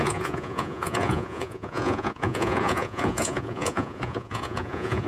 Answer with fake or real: fake